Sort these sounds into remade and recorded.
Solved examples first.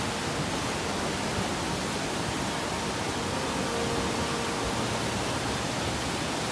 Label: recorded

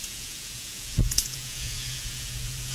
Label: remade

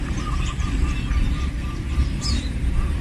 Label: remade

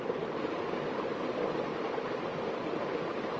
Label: recorded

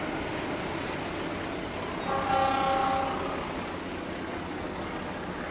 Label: recorded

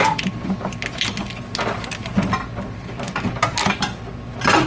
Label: recorded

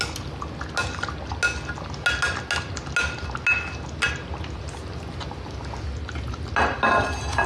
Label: recorded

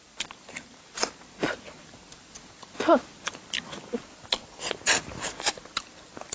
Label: recorded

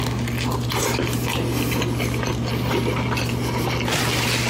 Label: recorded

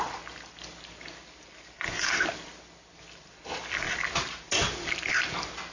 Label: recorded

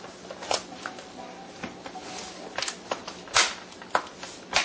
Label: recorded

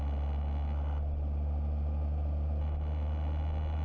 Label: recorded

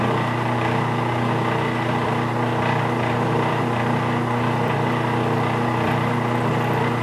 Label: remade